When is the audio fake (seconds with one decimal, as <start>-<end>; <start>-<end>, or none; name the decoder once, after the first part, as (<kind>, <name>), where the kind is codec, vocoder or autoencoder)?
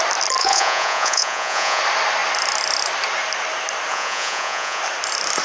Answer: 0.4-1.8 (vocoder, Vocos); 3.9-4.8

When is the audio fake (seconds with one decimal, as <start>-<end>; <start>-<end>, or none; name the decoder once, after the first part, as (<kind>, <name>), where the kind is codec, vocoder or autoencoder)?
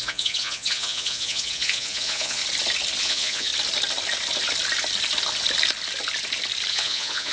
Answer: 0.0-2.4 (vocoder, Vocos); 3.0-3.5; 6.7-7.3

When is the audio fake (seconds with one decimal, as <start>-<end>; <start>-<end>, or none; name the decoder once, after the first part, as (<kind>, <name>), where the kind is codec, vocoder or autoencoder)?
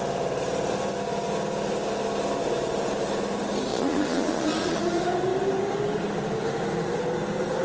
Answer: 3.7-4.8 (vocoder, Vocos)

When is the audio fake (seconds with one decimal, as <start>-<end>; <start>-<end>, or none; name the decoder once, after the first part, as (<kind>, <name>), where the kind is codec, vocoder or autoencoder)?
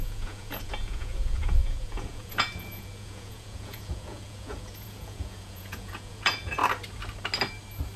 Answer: 0.0-6.6 (vocoder, Vocos)